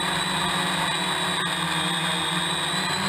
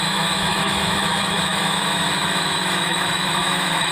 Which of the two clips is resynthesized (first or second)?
second